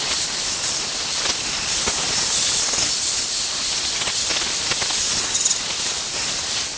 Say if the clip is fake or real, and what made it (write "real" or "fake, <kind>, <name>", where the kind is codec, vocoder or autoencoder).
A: real